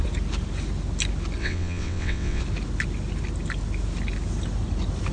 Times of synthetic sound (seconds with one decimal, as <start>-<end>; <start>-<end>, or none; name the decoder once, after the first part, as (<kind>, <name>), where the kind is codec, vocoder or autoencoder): 1.4-2.4 (vocoder, WaveNeXt)